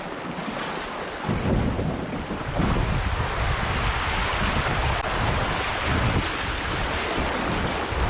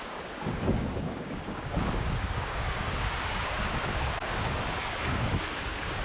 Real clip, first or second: first